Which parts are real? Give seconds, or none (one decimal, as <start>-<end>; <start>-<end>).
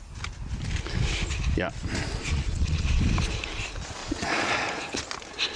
0.0-2.2; 3.0-4.0; 5.0-5.6